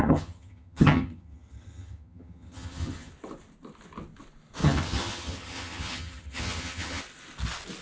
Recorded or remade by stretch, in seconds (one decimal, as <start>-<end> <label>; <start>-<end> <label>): 0.0-3.1 remade; 3.1-4.6 recorded; 4.6-7.0 remade; 7.0-7.8 recorded